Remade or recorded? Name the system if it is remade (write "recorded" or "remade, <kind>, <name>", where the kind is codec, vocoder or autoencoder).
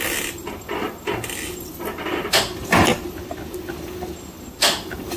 recorded